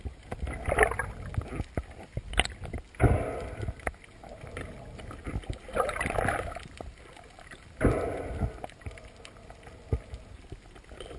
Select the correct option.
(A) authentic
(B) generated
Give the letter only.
A